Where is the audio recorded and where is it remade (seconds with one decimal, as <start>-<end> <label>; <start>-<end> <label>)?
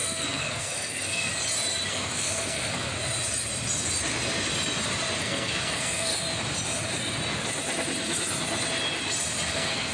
0.0-1.3 remade; 1.3-1.9 recorded; 1.9-2.9 remade; 2.9-5.2 recorded; 5.2-6.1 remade; 6.1-9.5 recorded; 9.5-9.9 remade